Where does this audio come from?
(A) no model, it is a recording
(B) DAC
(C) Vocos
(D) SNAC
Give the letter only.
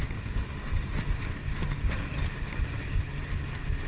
A